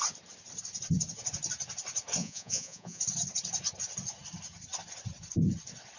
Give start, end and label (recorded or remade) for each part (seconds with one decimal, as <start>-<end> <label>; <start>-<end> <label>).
0.0-2.2 recorded; 2.2-3.0 remade; 3.0-6.0 recorded